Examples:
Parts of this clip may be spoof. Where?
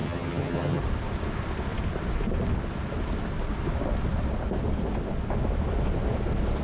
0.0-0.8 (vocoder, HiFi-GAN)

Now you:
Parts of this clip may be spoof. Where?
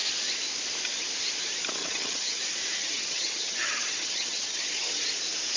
1.8-2.4 (vocoder, HiFi-GAN); 2.8-5.0